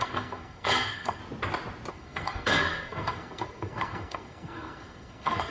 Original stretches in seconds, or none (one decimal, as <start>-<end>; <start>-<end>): 1.2-1.9